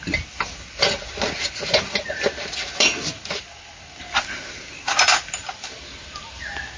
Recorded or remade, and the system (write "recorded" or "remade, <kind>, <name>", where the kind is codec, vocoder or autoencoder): recorded